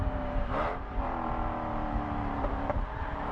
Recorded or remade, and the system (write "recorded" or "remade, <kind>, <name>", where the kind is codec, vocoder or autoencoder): remade, vocoder, BigVGAN v2